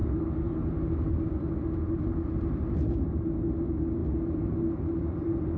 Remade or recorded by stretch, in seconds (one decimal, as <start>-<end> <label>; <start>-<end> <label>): 0.0-5.6 recorded